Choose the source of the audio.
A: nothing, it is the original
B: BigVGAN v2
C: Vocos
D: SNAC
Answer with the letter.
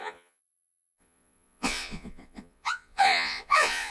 C